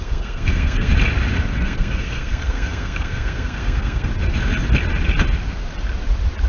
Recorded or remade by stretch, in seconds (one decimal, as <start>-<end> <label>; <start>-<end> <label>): 0.0-0.9 remade; 0.9-1.5 recorded; 1.5-4.1 remade; 4.1-6.5 recorded